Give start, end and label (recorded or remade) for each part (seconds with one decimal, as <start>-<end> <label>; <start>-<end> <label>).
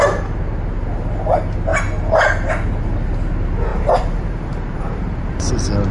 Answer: 0.0-3.7 recorded; 3.7-5.5 remade; 5.5-5.9 recorded